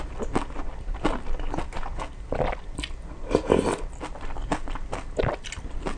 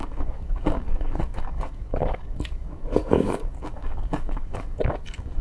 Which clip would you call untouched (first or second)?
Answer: first